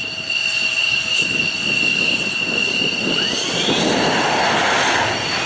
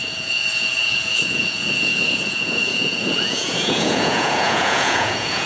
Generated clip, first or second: second